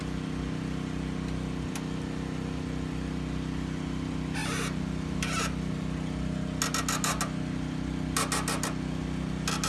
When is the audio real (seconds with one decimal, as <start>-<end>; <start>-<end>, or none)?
0.0-9.7